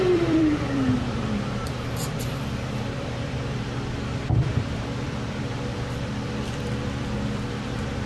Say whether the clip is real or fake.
fake